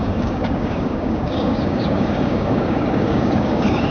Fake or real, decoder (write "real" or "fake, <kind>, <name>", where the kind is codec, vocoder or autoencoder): fake, codec, DAC